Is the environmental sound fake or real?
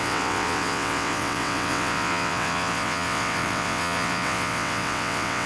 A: fake